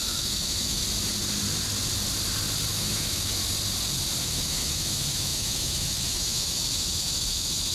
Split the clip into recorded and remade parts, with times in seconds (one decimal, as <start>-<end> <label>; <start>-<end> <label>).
0.0-0.8 remade; 0.8-2.7 recorded; 2.7-3.4 remade; 3.4-4.2 recorded; 4.2-7.7 remade